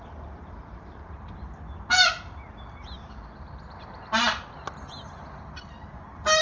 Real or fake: real